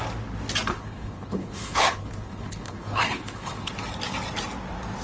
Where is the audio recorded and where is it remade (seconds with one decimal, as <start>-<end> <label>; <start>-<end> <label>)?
0.0-0.7 recorded; 0.7-3.7 remade; 3.7-5.0 recorded